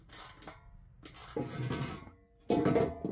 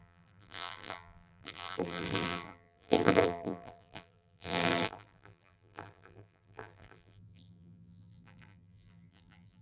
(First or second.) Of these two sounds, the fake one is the second